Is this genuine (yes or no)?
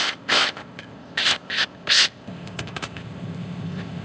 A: no